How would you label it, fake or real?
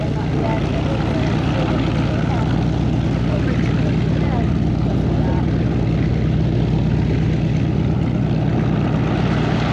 real